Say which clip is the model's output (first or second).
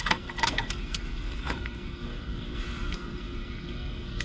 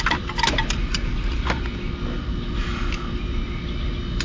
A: first